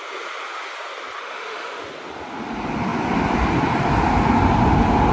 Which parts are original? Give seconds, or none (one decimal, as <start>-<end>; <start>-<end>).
0.0-1.2; 1.8-5.1